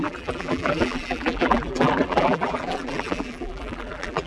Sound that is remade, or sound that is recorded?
remade